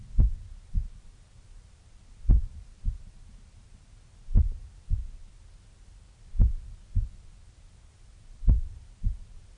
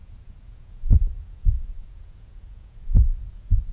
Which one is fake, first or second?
second